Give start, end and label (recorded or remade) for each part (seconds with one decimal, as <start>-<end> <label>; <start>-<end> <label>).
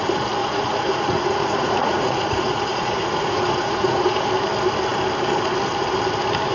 0.0-0.4 recorded; 0.4-4.3 remade; 4.3-6.5 recorded